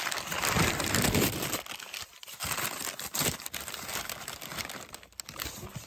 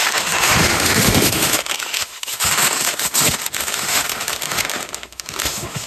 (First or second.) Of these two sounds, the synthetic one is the second